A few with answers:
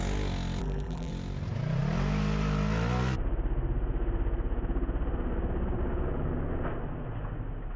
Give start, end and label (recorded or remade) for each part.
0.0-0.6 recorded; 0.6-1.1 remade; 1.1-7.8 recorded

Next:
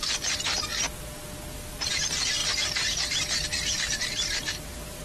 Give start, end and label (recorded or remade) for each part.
0.0-0.7 remade; 0.7-1.8 recorded; 1.8-2.4 remade; 2.4-3.7 recorded; 3.7-5.0 remade